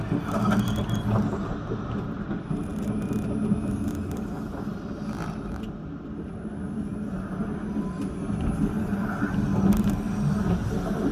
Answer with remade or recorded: recorded